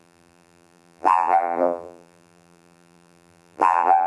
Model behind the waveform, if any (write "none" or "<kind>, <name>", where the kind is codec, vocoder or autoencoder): vocoder, BigVGAN v2